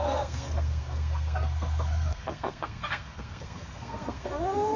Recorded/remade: remade